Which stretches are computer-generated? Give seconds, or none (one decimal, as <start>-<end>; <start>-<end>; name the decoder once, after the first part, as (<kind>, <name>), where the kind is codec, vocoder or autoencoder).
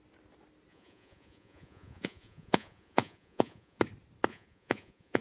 0.7-3.8 (vocoder, Vocos); 4.3-5.2